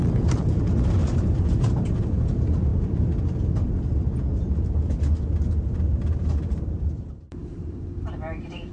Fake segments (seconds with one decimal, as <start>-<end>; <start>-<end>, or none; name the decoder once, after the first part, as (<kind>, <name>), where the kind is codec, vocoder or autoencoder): 1.0-1.7 (vocoder, BigVGAN v2); 5.9-8.7